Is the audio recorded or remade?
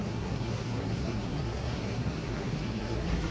remade